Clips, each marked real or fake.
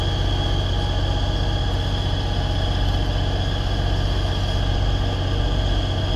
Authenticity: real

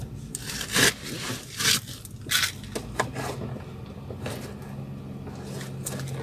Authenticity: real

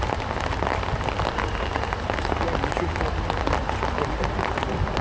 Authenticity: real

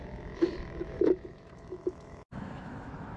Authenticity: fake